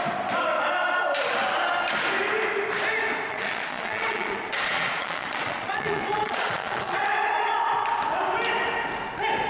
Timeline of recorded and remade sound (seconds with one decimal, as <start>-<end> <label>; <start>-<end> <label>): 0.0-3.3 recorded; 3.3-7.0 remade; 7.0-9.5 recorded